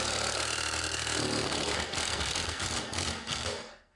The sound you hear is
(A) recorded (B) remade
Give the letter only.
B